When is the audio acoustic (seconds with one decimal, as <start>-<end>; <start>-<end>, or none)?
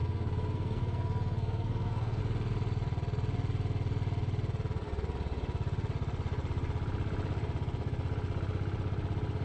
2.2-9.4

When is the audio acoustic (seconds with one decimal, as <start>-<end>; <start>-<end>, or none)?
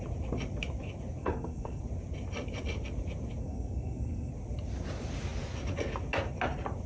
0.0-1.2; 1.8-3.4; 4.3-6.9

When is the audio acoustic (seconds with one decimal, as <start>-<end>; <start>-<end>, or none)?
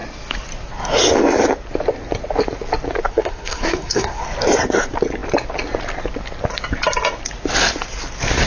0.0-3.1; 4.2-8.5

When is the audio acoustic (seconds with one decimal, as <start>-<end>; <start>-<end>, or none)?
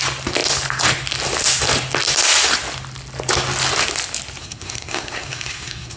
0.0-4.4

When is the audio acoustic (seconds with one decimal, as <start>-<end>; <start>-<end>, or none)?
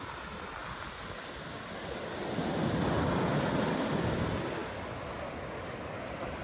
0.0-6.4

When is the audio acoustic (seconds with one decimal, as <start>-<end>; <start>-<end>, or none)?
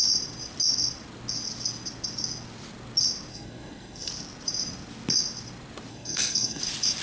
0.0-3.3; 4.1-5.9; 6.6-7.0